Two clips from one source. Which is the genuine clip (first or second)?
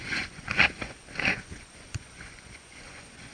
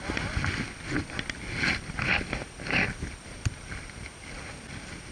second